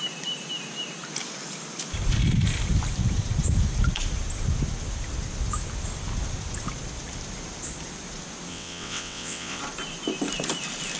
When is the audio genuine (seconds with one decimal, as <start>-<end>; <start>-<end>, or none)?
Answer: 0.0-8.5; 9.6-11.0